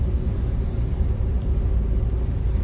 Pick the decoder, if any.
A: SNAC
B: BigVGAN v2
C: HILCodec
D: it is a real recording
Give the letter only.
B